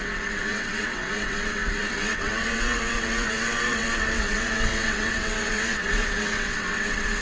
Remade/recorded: remade